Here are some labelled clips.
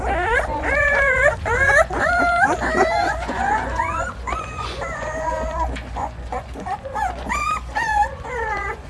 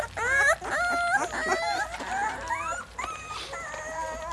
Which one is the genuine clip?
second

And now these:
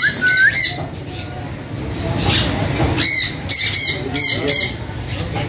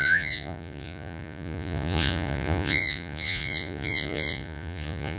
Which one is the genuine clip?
first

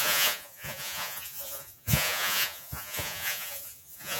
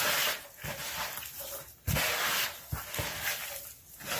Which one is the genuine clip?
second